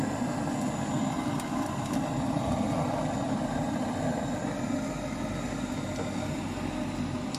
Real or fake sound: real